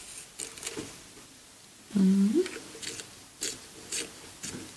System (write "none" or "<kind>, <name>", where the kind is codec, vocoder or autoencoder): none